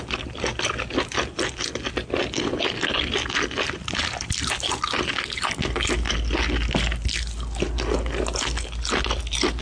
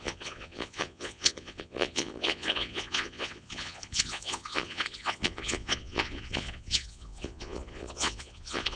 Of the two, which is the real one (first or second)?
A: first